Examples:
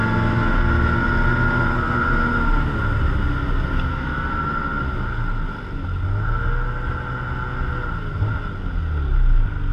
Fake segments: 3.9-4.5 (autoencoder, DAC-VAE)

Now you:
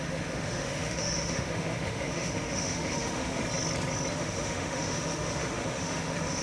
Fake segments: 0.0-3.4 (autoencoder, DAC-VAE); 4.1-6.4

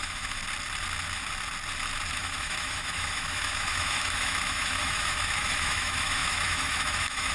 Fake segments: 0.0-0.4 (autoencoder, DAC-VAE); 2.1-7.3

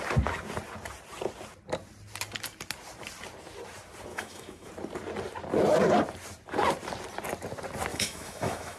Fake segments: 4.1-4.7 (autoencoder, DAC-VAE); 7.9-8.8

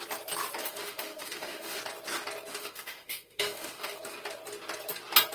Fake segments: 0.6-1.8 (autoencoder, DAC-VAE); 2.5-4.0

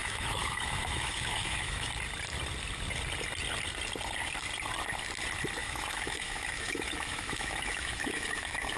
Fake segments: 0.0-1.9 (autoencoder, DAC-VAE); 5.6-8.8

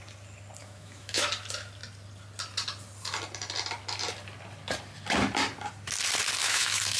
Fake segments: 0.6-1.3 (autoencoder, DAC-VAE); 6.4-7.0